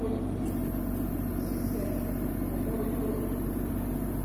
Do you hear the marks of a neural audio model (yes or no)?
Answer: no